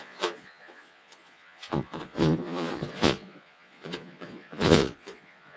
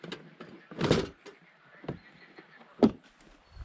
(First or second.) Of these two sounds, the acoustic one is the second